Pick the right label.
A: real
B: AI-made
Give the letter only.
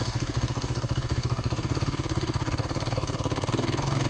B